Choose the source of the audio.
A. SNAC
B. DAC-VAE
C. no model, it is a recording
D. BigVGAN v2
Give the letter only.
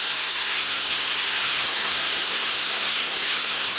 A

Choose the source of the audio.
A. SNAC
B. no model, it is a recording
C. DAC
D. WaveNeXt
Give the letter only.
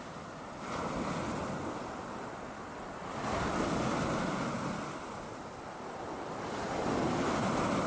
B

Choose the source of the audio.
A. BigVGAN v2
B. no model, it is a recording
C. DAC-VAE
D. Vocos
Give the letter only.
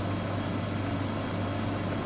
B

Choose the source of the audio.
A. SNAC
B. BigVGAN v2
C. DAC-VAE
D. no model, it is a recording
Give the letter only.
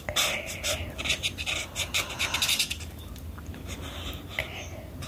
B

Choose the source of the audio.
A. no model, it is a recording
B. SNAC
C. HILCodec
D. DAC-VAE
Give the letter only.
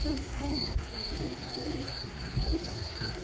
B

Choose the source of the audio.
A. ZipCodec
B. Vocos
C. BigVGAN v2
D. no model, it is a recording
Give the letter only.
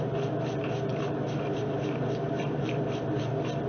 C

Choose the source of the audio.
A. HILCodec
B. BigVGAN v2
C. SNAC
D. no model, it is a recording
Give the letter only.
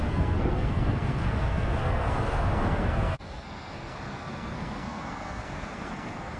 C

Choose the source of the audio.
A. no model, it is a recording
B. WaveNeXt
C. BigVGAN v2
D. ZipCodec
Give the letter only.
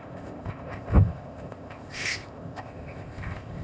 D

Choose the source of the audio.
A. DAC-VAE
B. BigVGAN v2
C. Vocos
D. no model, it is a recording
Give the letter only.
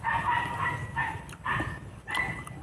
D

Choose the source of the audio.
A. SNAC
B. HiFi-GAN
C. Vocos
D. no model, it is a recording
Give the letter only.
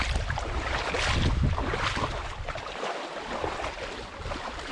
D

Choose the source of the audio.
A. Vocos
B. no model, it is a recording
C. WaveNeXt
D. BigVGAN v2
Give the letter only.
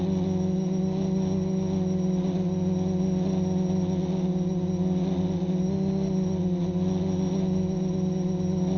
B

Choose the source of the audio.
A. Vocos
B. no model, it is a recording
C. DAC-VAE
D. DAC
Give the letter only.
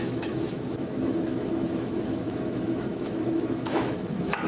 C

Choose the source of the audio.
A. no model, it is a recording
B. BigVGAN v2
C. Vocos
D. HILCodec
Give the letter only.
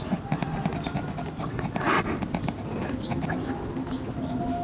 A